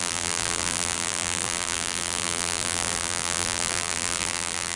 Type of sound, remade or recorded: remade